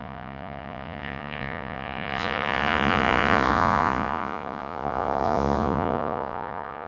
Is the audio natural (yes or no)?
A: no